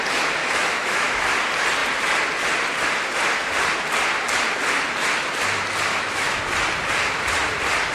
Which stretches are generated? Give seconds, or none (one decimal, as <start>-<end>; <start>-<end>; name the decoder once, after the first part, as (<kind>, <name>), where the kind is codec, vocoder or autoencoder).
0.4-1.2 (autoencoder, DAC-VAE); 5.9-6.4